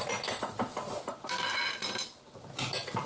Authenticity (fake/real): real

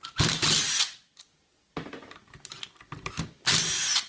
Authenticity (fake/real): real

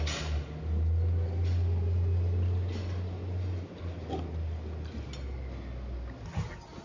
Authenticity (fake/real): real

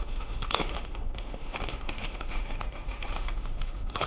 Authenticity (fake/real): fake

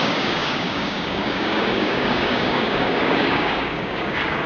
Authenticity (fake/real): fake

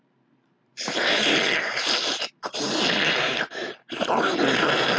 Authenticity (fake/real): fake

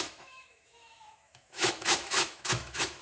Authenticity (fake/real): fake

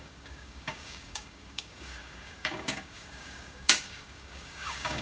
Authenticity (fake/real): fake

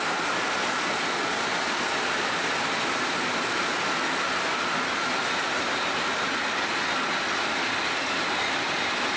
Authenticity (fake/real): real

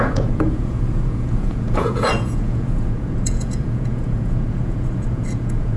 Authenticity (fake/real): fake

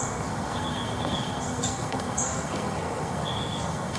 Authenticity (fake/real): fake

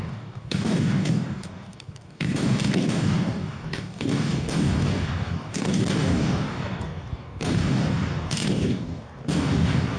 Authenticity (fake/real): fake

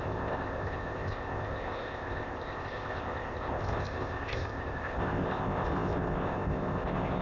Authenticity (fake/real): fake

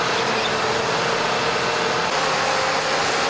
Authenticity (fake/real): real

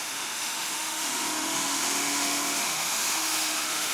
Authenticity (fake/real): fake